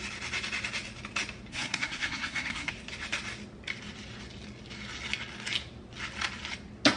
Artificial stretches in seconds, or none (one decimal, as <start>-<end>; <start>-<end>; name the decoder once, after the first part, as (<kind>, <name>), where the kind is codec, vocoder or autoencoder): 1.5-2.7 (codec, SNAC)